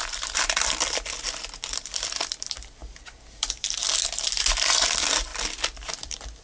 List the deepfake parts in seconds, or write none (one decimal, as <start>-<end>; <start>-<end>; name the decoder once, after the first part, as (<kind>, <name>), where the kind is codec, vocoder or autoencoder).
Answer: 0.0-2.8 (vocoder, BigVGAN v2); 3.4-3.8; 4.3-5.3; 6.0-6.4